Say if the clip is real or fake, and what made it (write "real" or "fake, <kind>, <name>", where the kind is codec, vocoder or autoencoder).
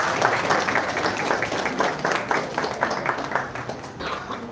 real